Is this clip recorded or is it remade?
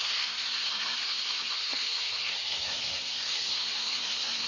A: remade